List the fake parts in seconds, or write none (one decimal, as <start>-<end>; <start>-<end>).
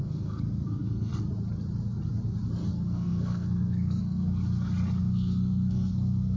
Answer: 0.0-1.1; 2.7-4.4; 5.0-6.4